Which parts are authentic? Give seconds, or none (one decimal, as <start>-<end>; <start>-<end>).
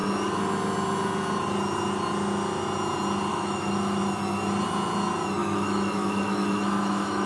0.0-3.3; 4.0-5.4